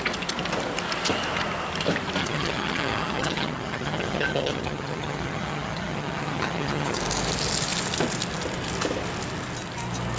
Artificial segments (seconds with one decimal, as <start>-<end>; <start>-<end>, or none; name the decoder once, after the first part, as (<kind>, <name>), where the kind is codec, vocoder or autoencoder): 2.2-7.0 (vocoder, HiFi-GAN)